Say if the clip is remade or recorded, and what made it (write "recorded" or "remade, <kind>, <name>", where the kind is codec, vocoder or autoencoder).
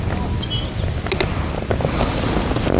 recorded